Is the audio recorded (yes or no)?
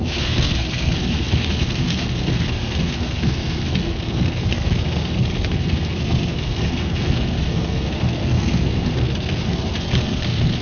no